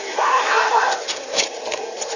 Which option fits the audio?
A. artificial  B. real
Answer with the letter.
A